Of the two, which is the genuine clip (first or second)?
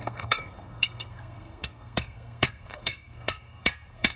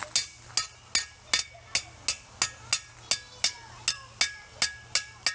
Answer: second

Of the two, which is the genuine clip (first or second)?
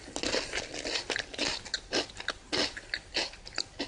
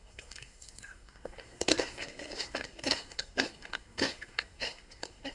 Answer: first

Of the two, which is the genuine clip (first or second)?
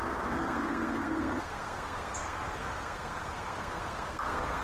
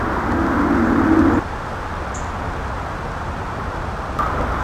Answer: second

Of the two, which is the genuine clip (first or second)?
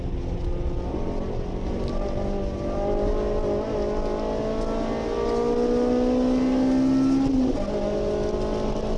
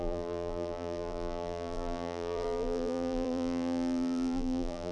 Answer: first